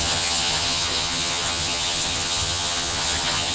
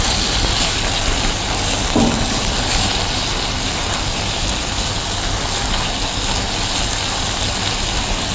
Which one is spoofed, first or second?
first